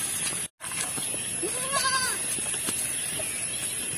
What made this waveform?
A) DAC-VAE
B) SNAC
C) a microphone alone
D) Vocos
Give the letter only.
C